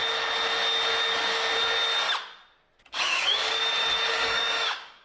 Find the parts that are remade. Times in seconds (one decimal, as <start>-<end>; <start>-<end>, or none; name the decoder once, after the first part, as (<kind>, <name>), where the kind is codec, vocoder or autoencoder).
3.0-3.6 (codec, DAC); 4.1-5.0